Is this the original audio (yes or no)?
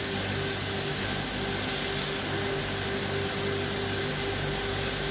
yes